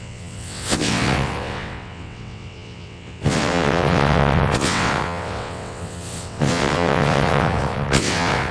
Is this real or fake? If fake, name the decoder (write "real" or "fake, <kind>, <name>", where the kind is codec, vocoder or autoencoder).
fake, vocoder, WaveNeXt